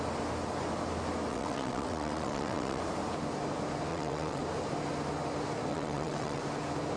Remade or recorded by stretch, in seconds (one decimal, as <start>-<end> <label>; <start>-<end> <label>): 0.0-1.3 recorded; 1.3-2.8 remade; 2.8-3.9 recorded; 3.9-4.4 remade; 4.4-5.7 recorded; 5.7-6.4 remade; 6.4-7.0 recorded